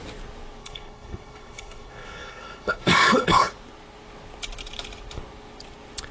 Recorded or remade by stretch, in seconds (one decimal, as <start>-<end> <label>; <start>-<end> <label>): 0.0-0.6 recorded; 0.6-3.5 remade; 3.5-6.1 recorded